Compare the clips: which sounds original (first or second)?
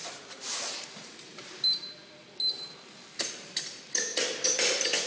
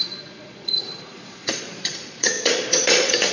first